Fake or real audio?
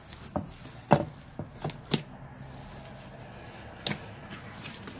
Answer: real